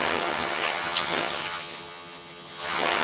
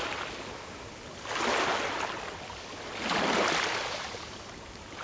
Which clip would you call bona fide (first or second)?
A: second